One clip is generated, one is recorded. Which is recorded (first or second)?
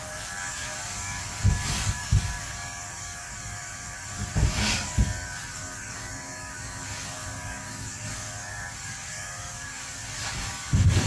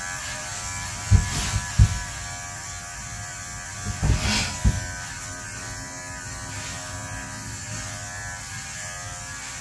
second